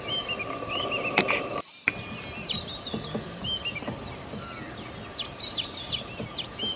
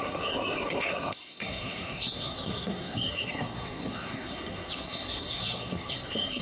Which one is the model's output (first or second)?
second